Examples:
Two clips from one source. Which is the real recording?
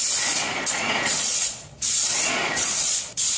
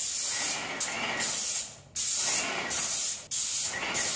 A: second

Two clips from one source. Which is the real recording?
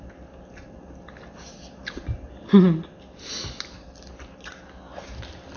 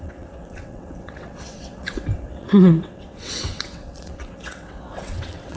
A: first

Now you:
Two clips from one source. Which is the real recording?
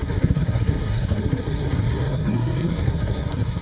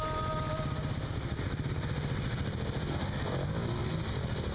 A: second